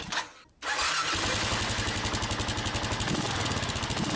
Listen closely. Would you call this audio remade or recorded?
recorded